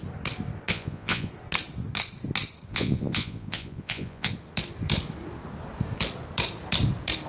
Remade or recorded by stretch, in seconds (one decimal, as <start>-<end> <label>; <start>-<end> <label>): 0.0-0.7 recorded; 0.7-1.3 remade; 1.3-2.7 recorded; 2.7-4.3 remade; 4.3-7.3 recorded